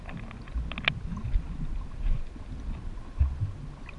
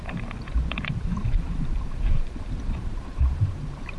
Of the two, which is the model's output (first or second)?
second